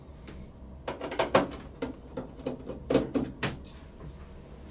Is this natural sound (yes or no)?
yes